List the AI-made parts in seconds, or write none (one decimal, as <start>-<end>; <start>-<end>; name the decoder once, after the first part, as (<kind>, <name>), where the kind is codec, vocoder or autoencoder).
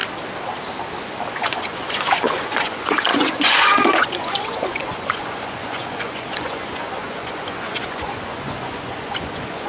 1.3-9.7 (vocoder, Vocos)